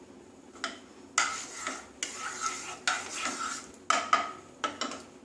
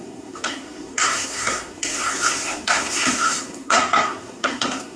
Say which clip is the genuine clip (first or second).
first